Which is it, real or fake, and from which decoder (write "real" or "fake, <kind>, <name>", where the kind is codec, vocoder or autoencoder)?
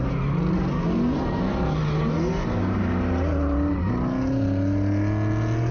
real